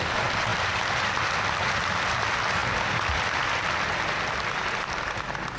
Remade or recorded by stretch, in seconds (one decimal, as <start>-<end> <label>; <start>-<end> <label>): 0.0-5.6 recorded